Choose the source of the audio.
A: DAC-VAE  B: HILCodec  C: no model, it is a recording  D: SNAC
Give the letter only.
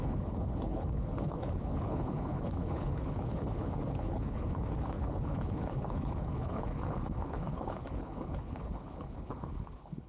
B